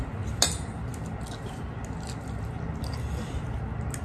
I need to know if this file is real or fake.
real